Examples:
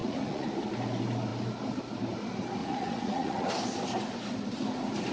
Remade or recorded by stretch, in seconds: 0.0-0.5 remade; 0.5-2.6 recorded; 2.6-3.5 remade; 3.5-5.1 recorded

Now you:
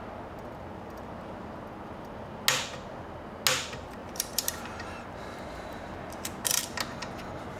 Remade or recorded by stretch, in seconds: 0.0-4.0 recorded; 4.0-6.6 remade; 6.6-7.6 recorded

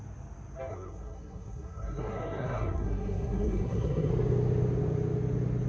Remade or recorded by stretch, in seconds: 0.0-0.7 recorded; 0.7-4.1 remade; 4.1-5.7 recorded